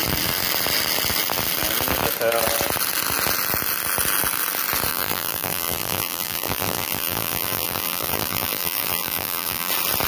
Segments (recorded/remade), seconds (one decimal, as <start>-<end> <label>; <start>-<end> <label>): 0.0-4.9 recorded; 4.9-9.7 remade; 9.7-10.1 recorded

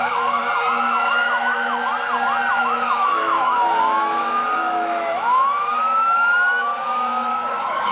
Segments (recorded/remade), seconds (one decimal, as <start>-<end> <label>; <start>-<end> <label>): 0.0-0.4 remade; 0.4-1.1 recorded; 1.1-1.9 remade; 1.9-2.5 recorded; 2.5-7.9 remade